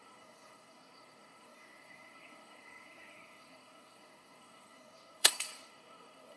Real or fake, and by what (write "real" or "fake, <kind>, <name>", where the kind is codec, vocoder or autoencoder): fake, codec, SNAC